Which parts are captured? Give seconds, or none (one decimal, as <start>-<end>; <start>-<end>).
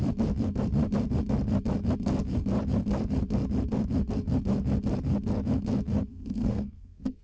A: 0.0-6.1